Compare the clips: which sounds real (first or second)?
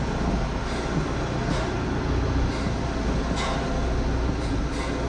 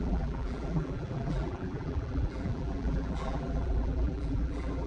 first